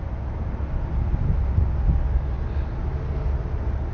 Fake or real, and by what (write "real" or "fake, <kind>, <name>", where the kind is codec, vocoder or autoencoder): real